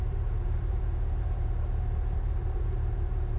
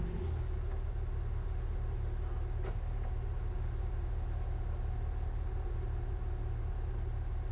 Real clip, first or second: second